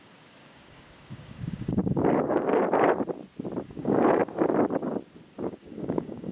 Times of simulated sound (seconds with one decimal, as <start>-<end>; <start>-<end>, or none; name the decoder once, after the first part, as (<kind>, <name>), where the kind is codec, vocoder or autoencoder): 0.0-2.5 (codec, DAC); 3.6-4.2; 5.4-6.3